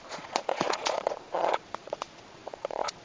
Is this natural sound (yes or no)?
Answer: no